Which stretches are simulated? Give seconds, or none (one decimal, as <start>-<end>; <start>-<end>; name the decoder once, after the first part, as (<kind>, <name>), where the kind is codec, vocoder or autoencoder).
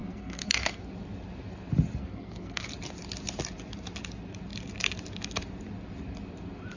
0.0-0.8 (codec, SNAC); 2.0-2.7